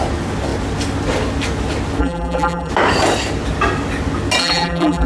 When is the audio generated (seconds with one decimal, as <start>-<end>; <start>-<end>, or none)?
2.0-2.7; 4.4-5.1